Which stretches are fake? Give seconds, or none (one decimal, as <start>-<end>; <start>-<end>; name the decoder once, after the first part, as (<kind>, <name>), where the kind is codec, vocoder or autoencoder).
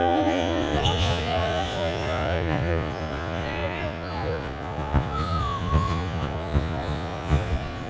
0.0-7.9 (vocoder, Vocos)